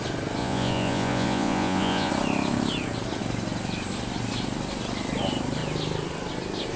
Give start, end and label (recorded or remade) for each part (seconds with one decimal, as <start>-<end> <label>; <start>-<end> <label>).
0.0-0.4 recorded; 0.4-2.1 remade; 2.1-6.8 recorded

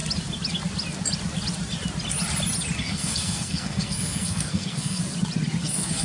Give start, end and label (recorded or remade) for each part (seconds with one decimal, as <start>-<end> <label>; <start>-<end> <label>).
0.0-2.8 recorded; 2.8-5.0 remade; 5.0-5.6 recorded; 5.6-6.0 remade

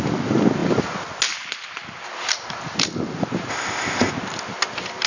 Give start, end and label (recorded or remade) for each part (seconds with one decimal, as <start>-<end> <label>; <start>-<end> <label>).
0.0-3.5 recorded; 3.5-4.1 remade; 4.1-5.1 recorded